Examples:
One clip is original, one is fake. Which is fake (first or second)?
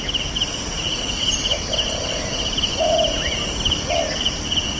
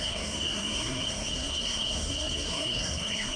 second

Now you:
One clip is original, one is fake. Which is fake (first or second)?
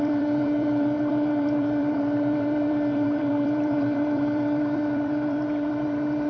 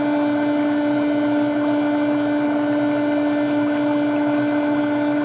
first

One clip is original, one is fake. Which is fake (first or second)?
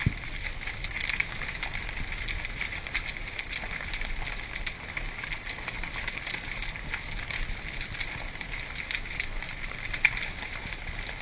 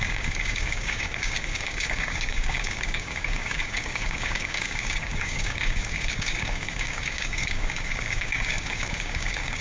second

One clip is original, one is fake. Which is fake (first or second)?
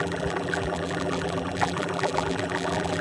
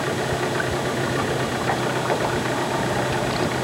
first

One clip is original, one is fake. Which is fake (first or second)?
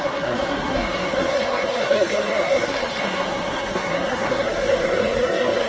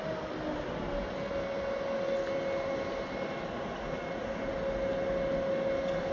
first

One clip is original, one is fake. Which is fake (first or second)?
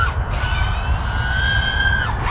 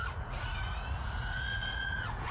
second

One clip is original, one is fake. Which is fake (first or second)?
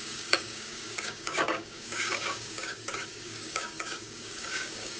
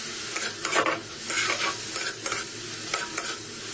first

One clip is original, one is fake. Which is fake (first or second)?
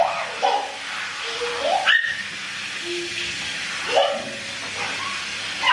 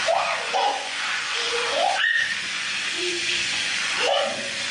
second